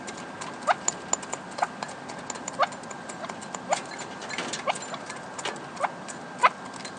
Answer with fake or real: real